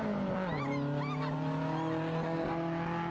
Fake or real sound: real